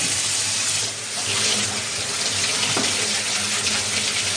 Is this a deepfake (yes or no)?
no